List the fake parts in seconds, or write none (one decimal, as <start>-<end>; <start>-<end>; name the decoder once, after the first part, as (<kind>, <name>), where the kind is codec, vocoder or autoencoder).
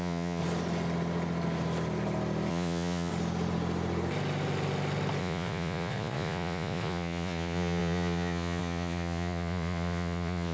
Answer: 0.0-0.4 (vocoder, Vocos); 2.5-3.1; 5.2-10.5